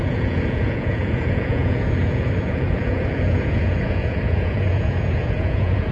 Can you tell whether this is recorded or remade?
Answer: remade